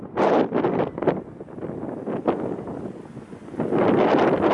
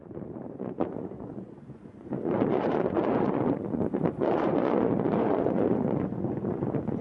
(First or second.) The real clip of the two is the first